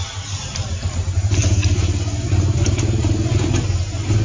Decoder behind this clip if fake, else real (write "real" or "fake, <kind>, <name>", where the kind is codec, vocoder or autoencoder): real